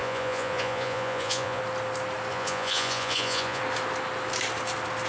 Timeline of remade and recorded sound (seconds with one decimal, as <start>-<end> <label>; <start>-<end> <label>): 0.0-1.6 remade; 1.6-2.3 recorded; 2.3-3.6 remade; 3.6-5.1 recorded